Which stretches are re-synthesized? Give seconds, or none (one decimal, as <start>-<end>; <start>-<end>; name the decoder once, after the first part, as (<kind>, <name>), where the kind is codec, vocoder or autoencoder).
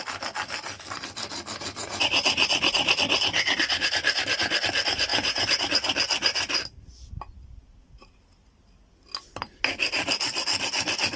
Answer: 5.1-5.6 (vocoder, Vocos)